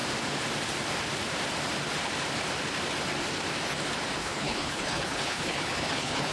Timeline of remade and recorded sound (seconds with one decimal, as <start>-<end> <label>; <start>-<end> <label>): 0.0-4.2 recorded; 4.2-6.3 remade